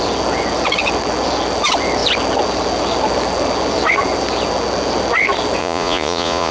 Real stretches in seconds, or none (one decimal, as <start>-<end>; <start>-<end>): 0.0-5.6